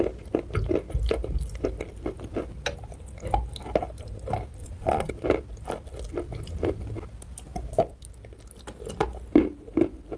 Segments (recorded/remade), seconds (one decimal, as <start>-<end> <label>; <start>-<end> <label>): 0.0-4.6 recorded; 4.6-5.1 remade; 5.1-10.2 recorded